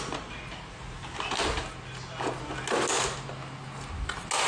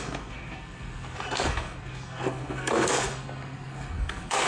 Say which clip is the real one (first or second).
first